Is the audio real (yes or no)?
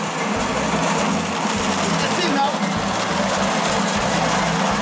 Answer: yes